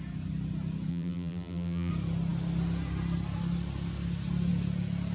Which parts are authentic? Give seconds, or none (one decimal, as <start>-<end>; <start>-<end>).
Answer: 0.0-0.9; 1.9-5.1

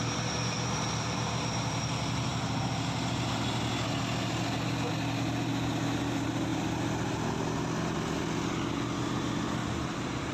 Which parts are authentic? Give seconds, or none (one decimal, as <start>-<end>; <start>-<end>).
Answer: 0.0-9.6

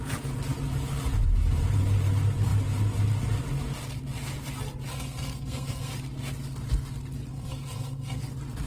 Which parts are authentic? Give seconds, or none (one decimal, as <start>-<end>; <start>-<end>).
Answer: 0.0-4.9; 5.9-7.3; 8.2-8.7

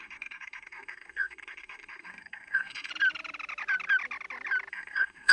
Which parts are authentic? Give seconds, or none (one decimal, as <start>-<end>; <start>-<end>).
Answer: 2.9-4.7

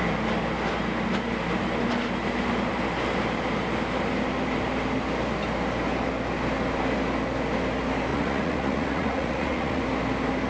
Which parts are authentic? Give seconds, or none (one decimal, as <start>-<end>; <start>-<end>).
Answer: 0.0-8.1; 9.8-10.5

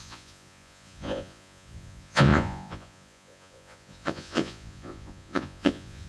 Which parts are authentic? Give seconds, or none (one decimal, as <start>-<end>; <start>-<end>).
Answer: none